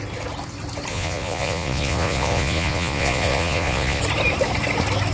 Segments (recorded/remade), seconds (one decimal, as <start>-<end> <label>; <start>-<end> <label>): 0.0-0.9 recorded; 0.9-4.0 remade; 4.0-5.1 recorded